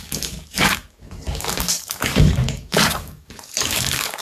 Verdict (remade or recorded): remade